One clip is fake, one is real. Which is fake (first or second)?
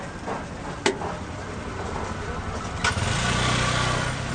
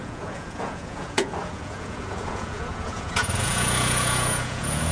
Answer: second